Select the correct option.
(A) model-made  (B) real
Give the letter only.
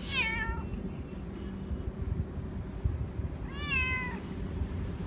B